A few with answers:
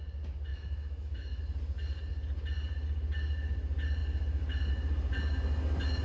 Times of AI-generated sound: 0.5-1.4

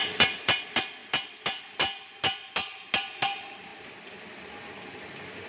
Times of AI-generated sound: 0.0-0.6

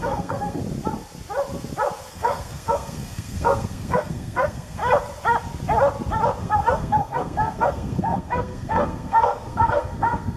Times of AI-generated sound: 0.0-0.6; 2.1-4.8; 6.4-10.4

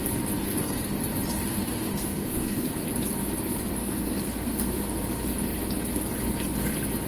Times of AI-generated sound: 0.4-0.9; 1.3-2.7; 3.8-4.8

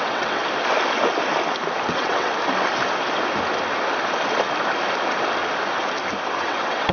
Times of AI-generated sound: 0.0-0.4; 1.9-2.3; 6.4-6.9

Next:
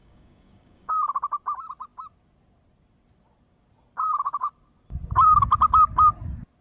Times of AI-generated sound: 0.0-0.9

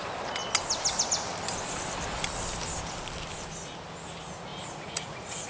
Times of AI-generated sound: 4.5-5.5